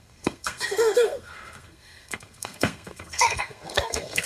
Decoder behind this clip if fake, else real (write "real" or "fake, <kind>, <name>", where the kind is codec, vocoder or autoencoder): fake, codec, SNAC